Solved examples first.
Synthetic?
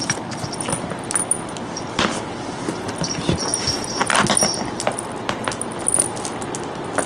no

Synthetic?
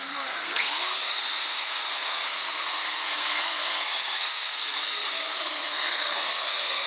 yes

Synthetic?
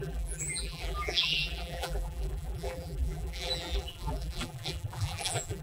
yes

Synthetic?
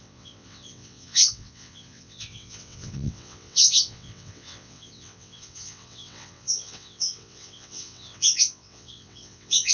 yes